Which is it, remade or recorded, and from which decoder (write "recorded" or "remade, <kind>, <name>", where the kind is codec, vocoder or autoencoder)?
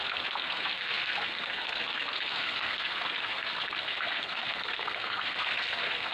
remade, codec, SNAC